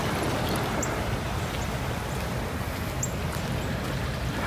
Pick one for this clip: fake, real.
real